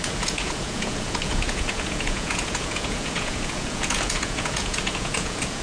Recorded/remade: remade